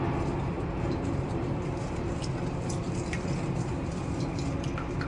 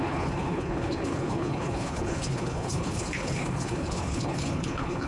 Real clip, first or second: first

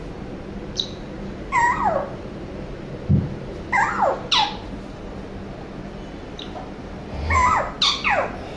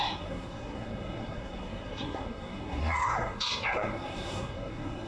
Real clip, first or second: first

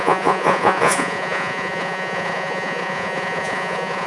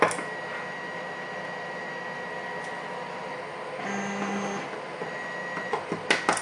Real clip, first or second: second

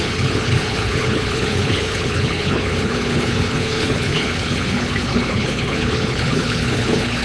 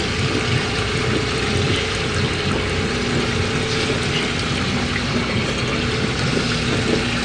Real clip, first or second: second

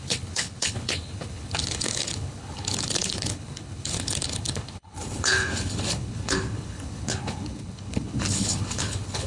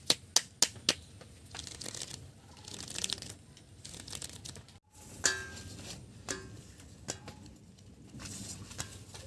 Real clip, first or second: second